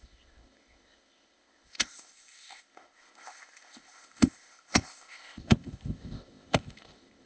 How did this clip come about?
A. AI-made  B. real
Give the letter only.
A